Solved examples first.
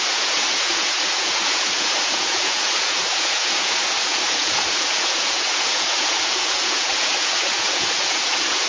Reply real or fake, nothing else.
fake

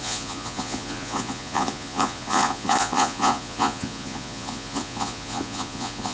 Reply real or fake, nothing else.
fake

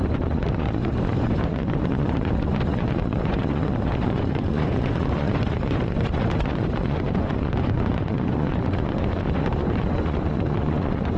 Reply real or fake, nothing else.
fake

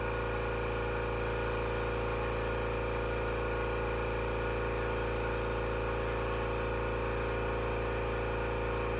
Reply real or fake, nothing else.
real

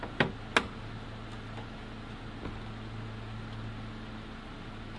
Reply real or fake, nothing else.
real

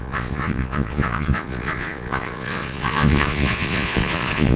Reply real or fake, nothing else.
fake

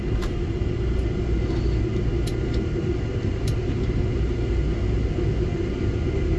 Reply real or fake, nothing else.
real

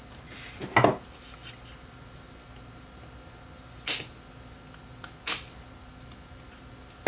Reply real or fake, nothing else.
real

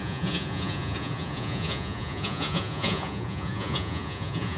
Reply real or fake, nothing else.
fake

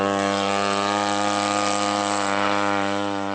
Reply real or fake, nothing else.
real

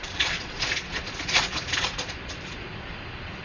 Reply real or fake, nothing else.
fake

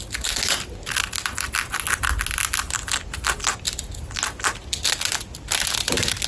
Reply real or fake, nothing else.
real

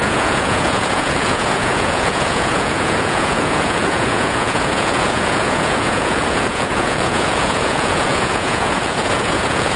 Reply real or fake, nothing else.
fake